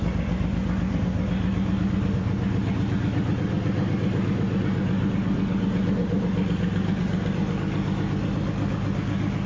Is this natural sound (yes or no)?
yes